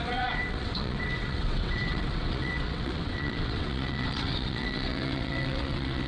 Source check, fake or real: fake